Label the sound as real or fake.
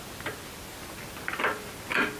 real